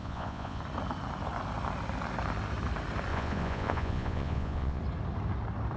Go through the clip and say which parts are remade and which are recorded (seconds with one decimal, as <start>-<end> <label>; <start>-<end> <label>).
0.0-0.6 remade; 0.6-3.1 recorded; 3.1-4.8 remade; 4.8-5.8 recorded